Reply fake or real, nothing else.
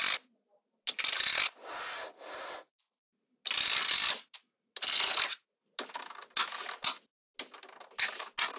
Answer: real